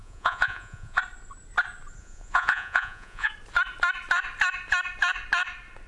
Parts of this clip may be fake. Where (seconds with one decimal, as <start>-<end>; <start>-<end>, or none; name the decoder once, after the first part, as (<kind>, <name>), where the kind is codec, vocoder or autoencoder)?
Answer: 0.0-1.0 (vocoder, Vocos); 2.0-3.3